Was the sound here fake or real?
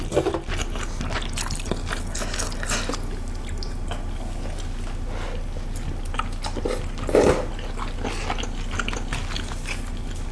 real